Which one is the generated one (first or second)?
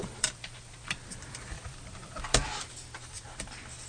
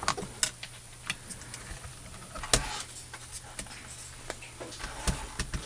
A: first